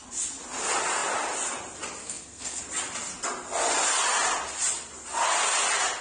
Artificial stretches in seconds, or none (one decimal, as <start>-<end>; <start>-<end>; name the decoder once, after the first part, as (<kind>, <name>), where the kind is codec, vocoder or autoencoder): 2.0-2.6 (codec, SNAC)